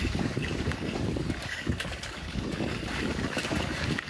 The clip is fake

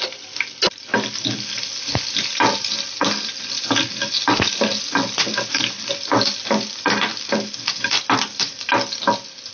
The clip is real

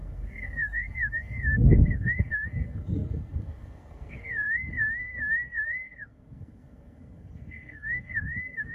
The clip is fake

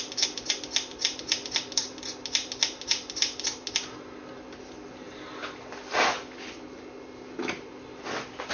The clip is real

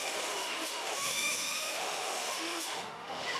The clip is fake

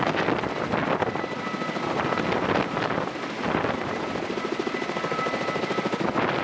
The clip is real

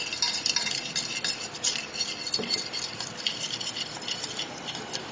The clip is real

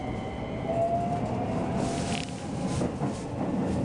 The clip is real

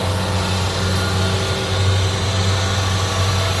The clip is real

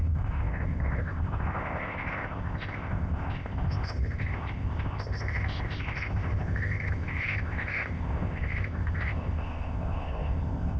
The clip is fake